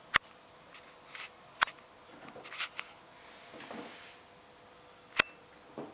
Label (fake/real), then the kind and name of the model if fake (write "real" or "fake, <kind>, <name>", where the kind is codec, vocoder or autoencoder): real